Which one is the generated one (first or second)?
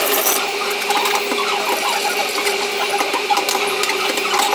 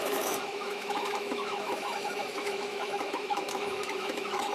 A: second